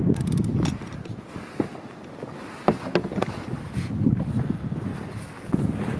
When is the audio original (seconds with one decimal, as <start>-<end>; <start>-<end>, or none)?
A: 0.0-6.0